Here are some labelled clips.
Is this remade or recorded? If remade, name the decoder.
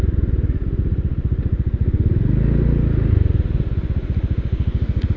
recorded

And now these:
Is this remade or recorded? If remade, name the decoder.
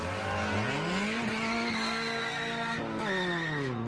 recorded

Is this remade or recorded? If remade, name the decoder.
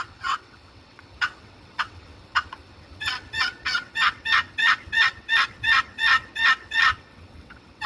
remade, vocoder, WaveNeXt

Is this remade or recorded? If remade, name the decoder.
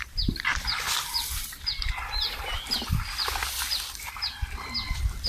recorded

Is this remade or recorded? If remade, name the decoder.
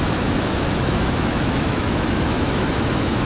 remade, autoencoder, DAC-VAE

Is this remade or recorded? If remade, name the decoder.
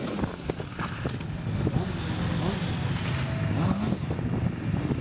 recorded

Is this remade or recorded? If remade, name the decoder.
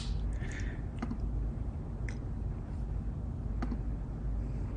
recorded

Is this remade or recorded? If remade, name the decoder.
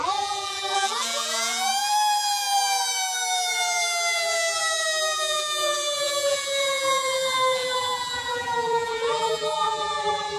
remade, vocoder, BigVGAN v2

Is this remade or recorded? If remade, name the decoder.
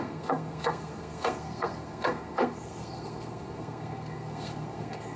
remade, codec, SNAC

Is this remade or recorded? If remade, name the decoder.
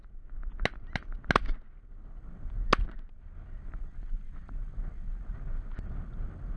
recorded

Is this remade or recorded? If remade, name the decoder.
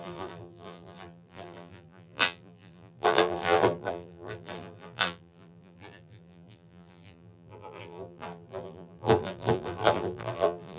remade, vocoder, BigVGAN v2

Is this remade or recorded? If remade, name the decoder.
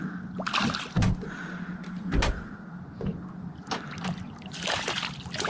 recorded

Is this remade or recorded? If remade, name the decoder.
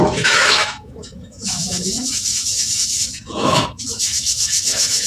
remade, autoencoder, DAC-VAE